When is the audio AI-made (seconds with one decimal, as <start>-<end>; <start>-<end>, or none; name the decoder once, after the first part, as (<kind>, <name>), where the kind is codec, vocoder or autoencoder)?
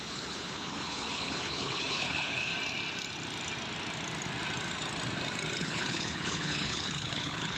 0.0-2.5 (codec, HILCodec); 5.6-7.6